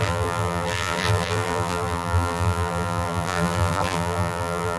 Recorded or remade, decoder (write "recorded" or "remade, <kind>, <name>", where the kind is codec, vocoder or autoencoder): remade, vocoder, BigVGAN v2